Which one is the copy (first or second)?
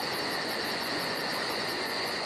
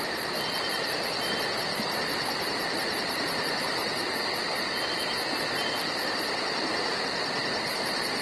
first